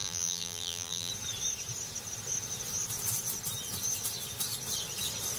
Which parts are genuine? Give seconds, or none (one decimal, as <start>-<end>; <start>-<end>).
1.1-5.4